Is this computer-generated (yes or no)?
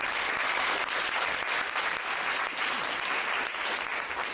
no